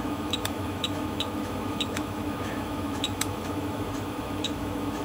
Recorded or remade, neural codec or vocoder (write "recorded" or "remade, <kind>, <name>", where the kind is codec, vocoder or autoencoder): remade, autoencoder, DAC-VAE